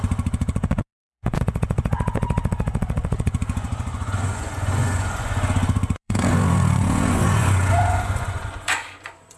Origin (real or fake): fake